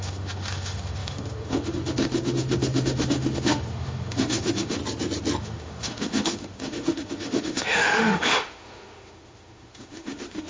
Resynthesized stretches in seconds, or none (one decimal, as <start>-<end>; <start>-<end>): 0.0-4.8; 5.4-10.5